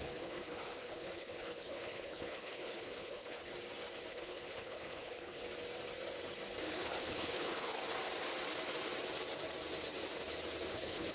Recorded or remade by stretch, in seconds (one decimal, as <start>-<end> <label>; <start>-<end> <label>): 0.0-3.5 remade; 3.5-4.1 recorded; 4.1-5.4 remade; 5.4-6.6 recorded; 6.6-7.8 remade; 7.8-10.7 recorded; 10.7-11.1 remade